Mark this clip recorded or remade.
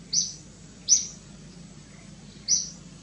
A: recorded